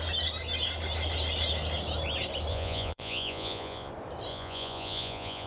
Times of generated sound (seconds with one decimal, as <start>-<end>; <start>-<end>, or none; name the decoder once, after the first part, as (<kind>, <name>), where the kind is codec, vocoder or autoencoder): 2.5-3.9 (vocoder, Vocos); 4.3-5.5